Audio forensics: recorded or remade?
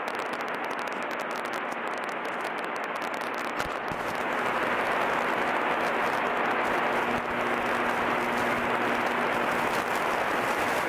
recorded